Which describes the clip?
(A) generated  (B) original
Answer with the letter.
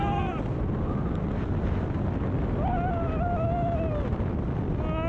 B